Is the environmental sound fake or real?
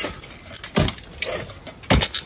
real